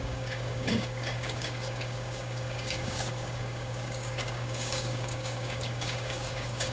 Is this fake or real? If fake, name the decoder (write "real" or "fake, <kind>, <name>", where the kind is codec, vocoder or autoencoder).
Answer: fake, codec, DAC